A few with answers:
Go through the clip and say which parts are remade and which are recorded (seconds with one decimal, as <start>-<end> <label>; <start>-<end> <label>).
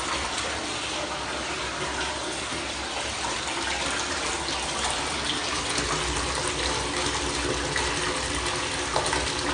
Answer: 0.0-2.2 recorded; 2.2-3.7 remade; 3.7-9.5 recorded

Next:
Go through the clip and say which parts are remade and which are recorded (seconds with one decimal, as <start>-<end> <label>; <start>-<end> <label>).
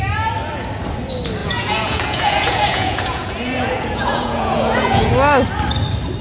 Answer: 0.0-1.4 recorded; 1.4-5.1 remade; 5.1-6.2 recorded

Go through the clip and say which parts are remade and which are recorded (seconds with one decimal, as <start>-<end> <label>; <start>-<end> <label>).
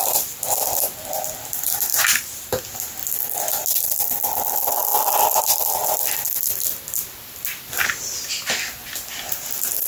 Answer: 0.0-1.9 recorded; 1.9-2.6 remade; 2.6-9.9 recorded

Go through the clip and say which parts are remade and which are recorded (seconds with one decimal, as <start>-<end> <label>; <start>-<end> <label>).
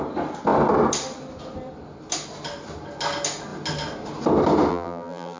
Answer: 0.0-4.7 recorded; 4.7-5.4 remade